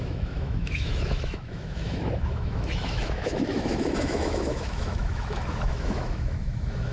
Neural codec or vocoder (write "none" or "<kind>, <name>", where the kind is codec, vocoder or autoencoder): autoencoder, DAC-VAE